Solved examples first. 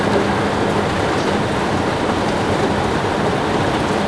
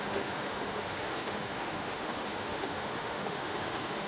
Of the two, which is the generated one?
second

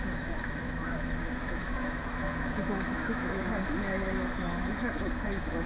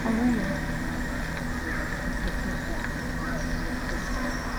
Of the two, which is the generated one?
first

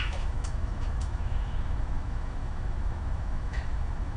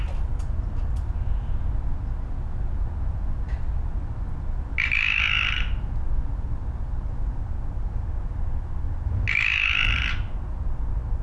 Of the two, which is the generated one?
first